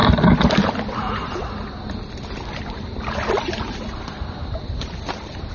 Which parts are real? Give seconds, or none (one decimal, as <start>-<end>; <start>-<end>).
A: 0.0-5.5

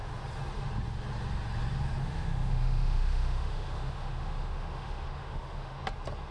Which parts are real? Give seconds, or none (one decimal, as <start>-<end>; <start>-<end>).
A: 0.0-2.0; 5.8-6.3